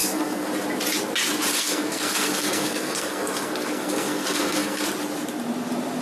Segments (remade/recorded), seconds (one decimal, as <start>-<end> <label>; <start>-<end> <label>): 0.0-0.5 remade; 0.5-1.5 recorded; 1.5-4.8 remade; 4.8-6.0 recorded